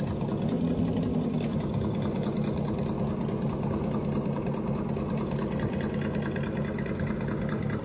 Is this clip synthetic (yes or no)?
no